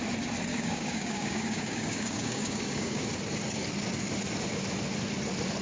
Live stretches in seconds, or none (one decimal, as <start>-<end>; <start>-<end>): 0.0-0.5; 3.0-5.6